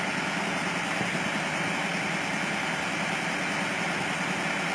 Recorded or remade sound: recorded